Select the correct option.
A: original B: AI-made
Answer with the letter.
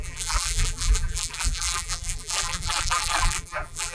B